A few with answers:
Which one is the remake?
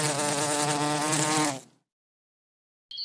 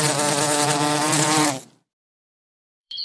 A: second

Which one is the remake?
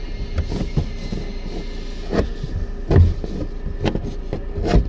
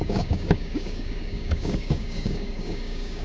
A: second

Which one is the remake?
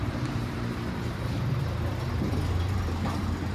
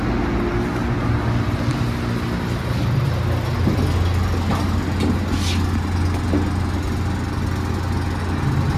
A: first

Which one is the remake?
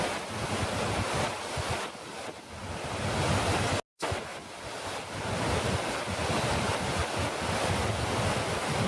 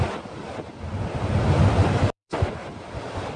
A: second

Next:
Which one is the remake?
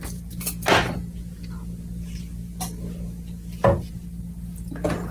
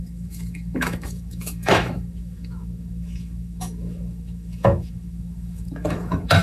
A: second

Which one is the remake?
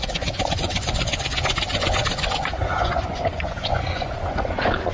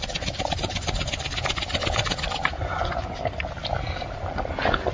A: first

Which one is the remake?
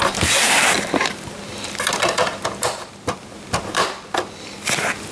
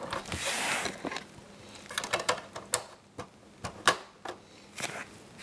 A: first